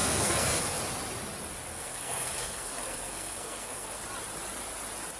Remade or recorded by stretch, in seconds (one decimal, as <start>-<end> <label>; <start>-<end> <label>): 0.0-0.8 remade; 0.8-1.7 recorded; 1.7-4.0 remade; 4.0-5.2 recorded

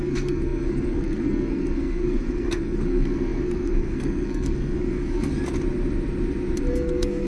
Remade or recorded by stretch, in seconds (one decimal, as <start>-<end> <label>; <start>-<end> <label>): 0.0-5.3 remade; 5.3-6.7 recorded; 6.7-7.3 remade

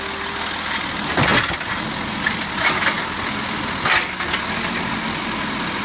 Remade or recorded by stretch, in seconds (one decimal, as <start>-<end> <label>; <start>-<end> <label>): 0.0-5.8 recorded

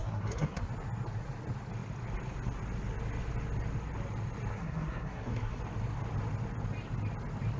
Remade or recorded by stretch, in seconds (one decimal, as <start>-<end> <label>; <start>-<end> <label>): 0.0-0.7 remade; 0.7-4.5 recorded; 4.5-5.6 remade; 5.6-7.6 recorded

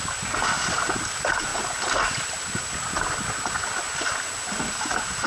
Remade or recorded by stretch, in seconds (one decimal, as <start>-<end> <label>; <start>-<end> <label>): 0.0-5.3 recorded

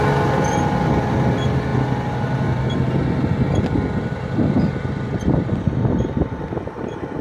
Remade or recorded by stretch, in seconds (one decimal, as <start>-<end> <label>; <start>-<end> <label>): 0.0-7.2 recorded

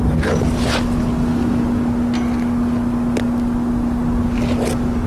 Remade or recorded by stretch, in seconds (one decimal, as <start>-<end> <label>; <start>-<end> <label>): 0.0-5.1 recorded